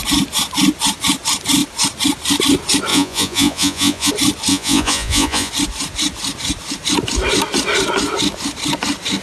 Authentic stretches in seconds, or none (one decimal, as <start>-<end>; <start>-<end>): 0.0-2.9; 4.1-4.5; 5.5-9.2